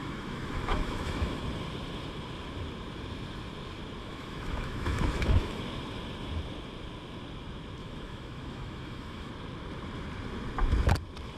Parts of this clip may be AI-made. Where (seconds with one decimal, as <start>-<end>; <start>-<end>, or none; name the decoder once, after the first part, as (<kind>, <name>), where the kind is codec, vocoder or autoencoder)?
0.0-1.4 (autoencoder, DAC-VAE); 4.0-5.6; 7.8-9.3